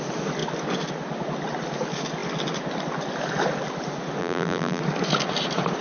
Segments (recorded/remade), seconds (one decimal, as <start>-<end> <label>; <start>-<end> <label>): 0.0-4.2 recorded; 4.2-4.8 remade; 4.8-5.8 recorded